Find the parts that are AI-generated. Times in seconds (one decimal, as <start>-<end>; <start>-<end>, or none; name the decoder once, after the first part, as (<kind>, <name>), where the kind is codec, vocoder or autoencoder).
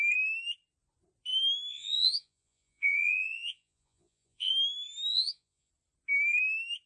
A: 1.7-4.5 (vocoder, Vocos); 5.1-5.7